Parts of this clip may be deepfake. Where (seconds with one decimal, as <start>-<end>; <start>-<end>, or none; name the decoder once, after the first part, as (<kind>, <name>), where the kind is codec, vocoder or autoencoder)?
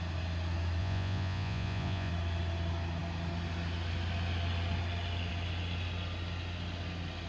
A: 0.8-2.1 (vocoder, Vocos)